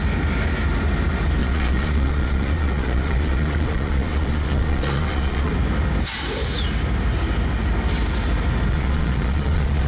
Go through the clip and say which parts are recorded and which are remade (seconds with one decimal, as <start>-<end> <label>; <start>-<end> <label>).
0.0-1.4 recorded; 1.4-5.5 remade; 5.5-8.7 recorded; 8.7-9.9 remade